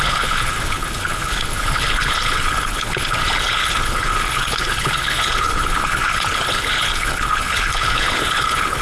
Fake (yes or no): yes